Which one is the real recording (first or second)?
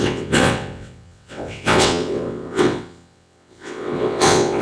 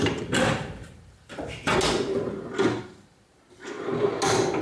second